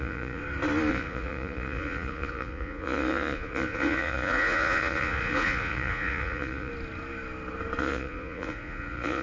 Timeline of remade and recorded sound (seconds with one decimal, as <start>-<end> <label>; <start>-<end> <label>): 0.0-0.4 remade; 0.4-0.9 recorded; 0.9-6.7 remade; 6.7-7.8 recorded; 7.8-9.2 remade